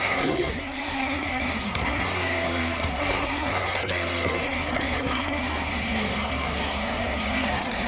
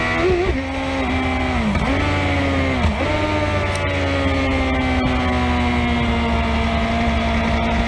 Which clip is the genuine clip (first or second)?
second